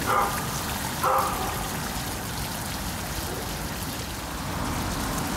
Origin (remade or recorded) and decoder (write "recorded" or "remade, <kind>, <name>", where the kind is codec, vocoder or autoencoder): recorded